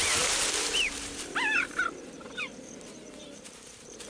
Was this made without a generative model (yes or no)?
no